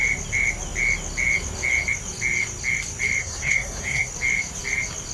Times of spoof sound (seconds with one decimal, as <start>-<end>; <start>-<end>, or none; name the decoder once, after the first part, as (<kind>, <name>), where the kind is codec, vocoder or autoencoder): 3.2-4.1 (codec, SNAC)

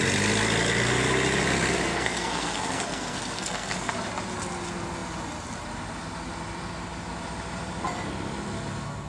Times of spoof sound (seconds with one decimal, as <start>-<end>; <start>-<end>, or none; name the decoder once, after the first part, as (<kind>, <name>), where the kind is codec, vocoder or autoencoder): 1.9-3.9 (codec, SNAC)

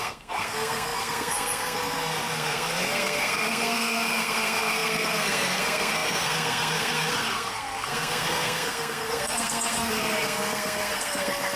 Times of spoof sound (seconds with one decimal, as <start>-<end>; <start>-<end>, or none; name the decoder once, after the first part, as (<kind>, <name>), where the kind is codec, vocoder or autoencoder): 0.0-11.6 (codec, SNAC)

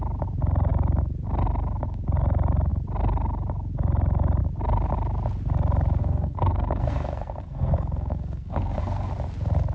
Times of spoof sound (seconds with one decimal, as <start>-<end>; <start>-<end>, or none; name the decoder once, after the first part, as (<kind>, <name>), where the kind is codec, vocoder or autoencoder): 6.0-9.1 (codec, SNAC)

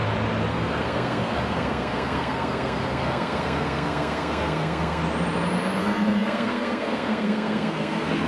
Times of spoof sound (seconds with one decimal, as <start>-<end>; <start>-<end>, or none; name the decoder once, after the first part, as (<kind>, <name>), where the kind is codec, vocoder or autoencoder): 0.5-5.0 (codec, SNAC); 5.8-8.3

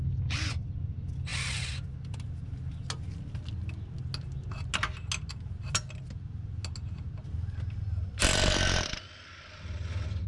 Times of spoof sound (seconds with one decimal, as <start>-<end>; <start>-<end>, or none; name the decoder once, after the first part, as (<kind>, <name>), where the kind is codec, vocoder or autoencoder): none